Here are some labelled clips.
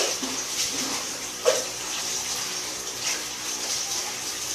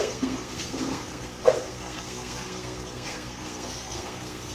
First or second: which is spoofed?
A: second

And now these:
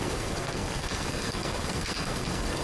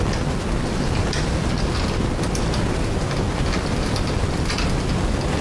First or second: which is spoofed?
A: first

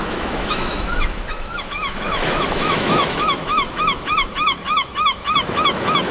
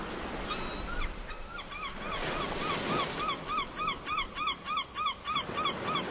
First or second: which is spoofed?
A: first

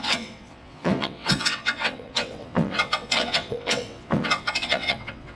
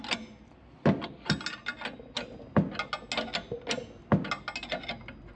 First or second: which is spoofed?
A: first